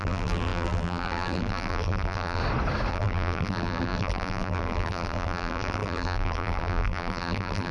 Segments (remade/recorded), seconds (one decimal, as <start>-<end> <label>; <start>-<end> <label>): 0.0-2.4 remade; 2.4-2.9 recorded; 2.9-7.7 remade